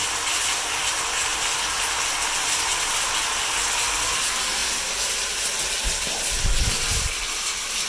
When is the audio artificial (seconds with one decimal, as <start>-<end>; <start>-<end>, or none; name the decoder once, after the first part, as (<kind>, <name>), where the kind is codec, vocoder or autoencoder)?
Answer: 1.3-3.1 (vocoder, BigVGAN v2); 4.6-6.6